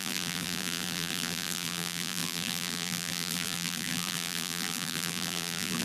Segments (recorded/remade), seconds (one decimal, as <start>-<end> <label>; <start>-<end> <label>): 0.0-5.8 remade